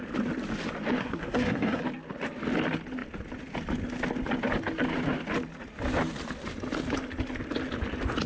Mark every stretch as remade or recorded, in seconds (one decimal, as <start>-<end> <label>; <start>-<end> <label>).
0.0-1.0 recorded; 1.0-1.8 remade; 1.8-8.3 recorded